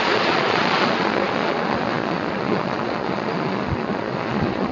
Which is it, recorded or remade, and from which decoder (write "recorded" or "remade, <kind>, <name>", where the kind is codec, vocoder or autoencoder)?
remade, vocoder, Vocos